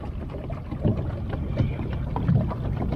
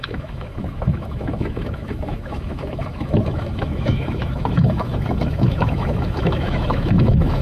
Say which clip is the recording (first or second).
first